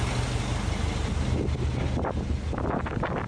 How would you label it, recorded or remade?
recorded